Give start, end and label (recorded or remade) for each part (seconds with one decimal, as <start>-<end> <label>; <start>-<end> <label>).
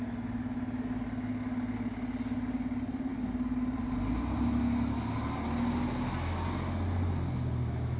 0.0-8.0 recorded